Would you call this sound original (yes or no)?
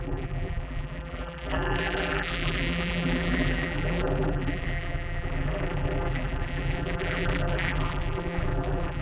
no